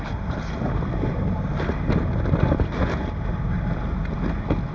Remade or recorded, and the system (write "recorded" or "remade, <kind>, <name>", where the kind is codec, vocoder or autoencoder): recorded